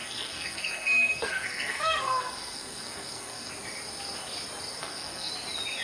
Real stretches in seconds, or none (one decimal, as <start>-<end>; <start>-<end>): 3.5-4.8; 5.3-5.8